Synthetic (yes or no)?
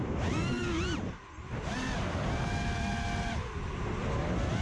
no